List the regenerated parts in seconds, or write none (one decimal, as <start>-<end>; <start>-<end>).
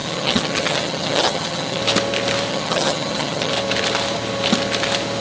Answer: 0.0-1.8; 2.5-3.5